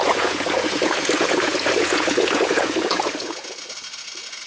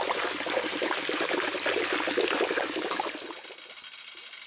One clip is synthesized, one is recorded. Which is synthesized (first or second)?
first